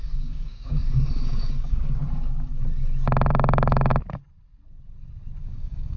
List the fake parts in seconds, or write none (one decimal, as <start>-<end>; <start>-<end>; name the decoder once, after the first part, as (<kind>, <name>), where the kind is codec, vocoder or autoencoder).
0.0-2.0 (codec, DAC); 3.3-3.9; 5.4-6.0